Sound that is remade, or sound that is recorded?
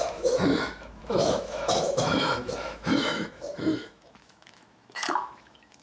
remade